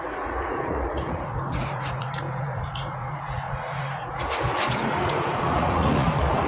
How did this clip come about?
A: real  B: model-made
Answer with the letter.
B